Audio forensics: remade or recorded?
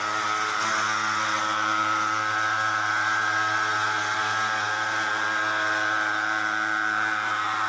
recorded